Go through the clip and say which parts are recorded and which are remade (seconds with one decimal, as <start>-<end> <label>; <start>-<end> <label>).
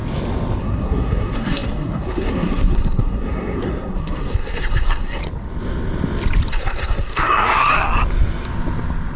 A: 0.0-0.6 recorded; 0.6-5.2 remade; 5.2-6.5 recorded; 6.5-7.7 remade; 7.7-9.2 recorded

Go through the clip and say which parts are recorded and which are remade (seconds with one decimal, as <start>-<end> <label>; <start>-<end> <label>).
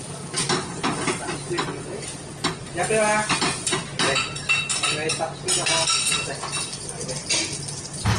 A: 0.0-8.2 recorded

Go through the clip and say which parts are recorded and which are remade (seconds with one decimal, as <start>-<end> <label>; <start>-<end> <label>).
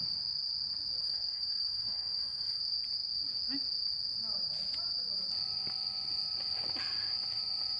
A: 0.0-1.0 recorded; 1.0-2.6 remade; 2.6-7.8 recorded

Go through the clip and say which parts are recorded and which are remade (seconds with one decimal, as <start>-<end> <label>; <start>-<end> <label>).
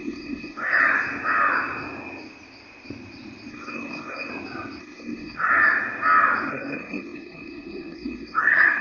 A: 0.0-0.8 remade; 0.8-3.5 recorded; 3.5-4.3 remade; 4.3-4.8 recorded; 4.8-5.5 remade; 5.5-6.5 recorded; 6.5-8.8 remade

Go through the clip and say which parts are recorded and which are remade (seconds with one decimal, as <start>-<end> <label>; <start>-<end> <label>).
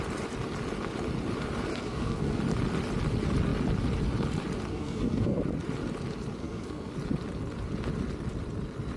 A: 0.0-1.7 recorded; 1.7-2.4 remade; 2.4-4.7 recorded; 4.7-5.4 remade; 5.4-6.4 recorded; 6.4-6.9 remade; 6.9-9.0 recorded